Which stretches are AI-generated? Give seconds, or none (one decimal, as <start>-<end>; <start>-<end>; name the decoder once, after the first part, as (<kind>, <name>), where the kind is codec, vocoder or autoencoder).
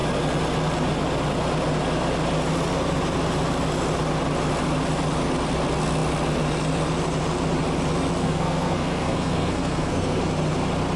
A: 8.2-10.2 (codec, SNAC)